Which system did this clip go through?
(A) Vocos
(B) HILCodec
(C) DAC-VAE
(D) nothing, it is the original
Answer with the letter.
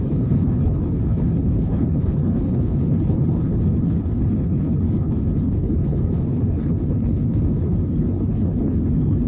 B